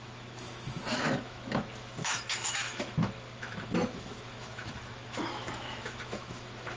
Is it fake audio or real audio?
fake